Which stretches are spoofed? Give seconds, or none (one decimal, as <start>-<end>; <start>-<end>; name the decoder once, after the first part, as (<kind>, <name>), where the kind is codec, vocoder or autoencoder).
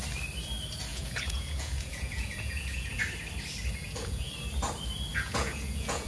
0.9-3.0 (vocoder, Vocos); 3.8-4.3; 5.1-6.1